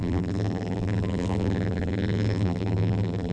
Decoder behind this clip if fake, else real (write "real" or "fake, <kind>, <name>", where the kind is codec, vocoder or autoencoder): fake, vocoder, BigVGAN v2